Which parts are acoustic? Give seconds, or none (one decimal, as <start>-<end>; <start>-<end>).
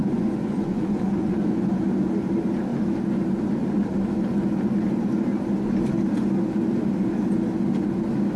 1.7-8.4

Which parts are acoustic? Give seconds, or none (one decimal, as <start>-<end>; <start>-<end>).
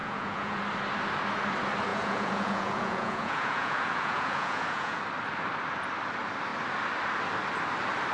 0.6-1.9; 5.0-8.1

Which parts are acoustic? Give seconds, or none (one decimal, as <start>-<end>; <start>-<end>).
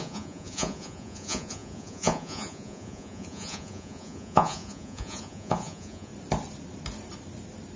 6.1-7.8